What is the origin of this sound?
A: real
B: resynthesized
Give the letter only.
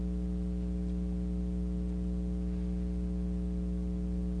A